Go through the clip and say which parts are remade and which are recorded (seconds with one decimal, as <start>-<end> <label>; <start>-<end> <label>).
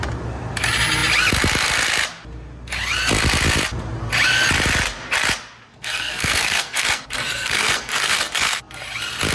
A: 0.0-5.7 recorded; 5.7-8.6 remade; 8.6-9.3 recorded